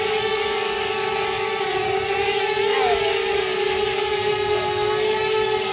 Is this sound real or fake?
fake